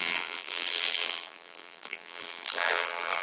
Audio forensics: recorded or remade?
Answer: remade